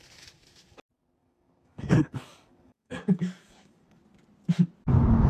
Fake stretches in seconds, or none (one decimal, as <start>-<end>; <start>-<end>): 1.2-4.0